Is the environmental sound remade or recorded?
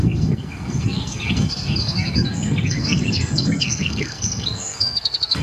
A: remade